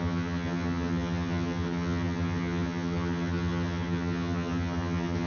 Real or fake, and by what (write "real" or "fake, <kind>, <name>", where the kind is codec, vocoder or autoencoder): fake, vocoder, HiFi-GAN